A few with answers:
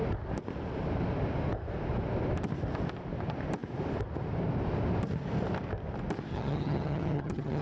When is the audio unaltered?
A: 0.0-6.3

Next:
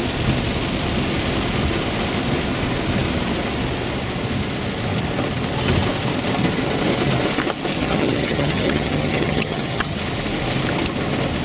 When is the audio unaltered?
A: 0.0-7.8; 10.0-11.4

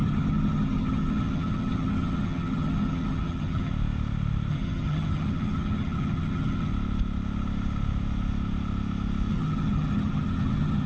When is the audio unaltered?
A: 3.7-4.5; 6.7-9.3

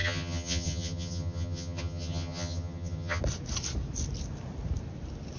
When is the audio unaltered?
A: 3.2-5.4

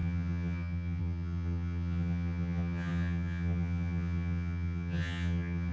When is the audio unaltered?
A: none

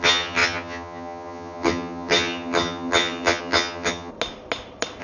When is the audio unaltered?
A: 4.1-5.0

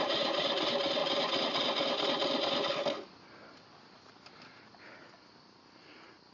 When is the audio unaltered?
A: 0.0-6.3

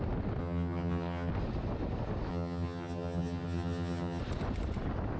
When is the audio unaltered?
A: 0.0-0.4; 1.3-2.3; 4.2-5.2